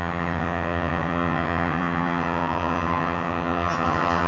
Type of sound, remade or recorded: remade